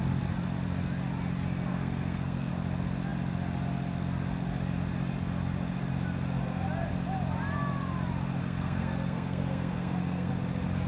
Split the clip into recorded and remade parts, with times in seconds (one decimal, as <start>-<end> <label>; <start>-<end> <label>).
0.0-1.7 recorded; 1.7-2.5 remade; 2.5-8.4 recorded; 8.4-10.3 remade; 10.3-10.9 recorded

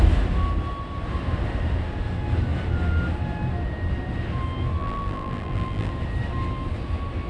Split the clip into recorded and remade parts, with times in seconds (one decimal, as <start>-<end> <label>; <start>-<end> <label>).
0.0-4.8 recorded; 4.8-5.9 remade; 5.9-7.3 recorded

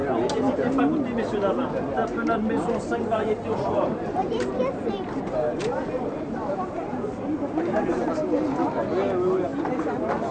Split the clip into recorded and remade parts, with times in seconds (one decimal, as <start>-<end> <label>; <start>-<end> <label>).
0.0-2.0 recorded; 2.0-7.2 remade; 7.2-10.3 recorded

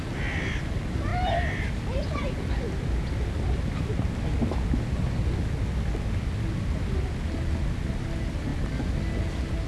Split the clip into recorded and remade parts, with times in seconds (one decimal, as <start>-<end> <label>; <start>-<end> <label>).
0.0-9.7 recorded

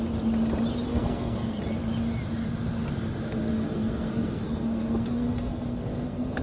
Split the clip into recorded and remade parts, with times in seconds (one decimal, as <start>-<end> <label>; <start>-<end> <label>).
0.0-0.9 recorded; 0.9-1.6 remade; 1.6-3.5 recorded; 3.5-6.4 remade

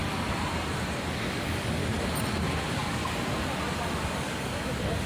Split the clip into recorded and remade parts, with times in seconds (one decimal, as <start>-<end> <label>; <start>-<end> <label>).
0.0-1.1 recorded; 1.1-1.8 remade; 1.8-2.6 recorded; 2.6-3.0 remade; 3.0-4.1 recorded; 4.1-5.1 remade